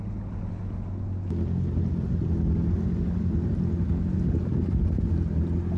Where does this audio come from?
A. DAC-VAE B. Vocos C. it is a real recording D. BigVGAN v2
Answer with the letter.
C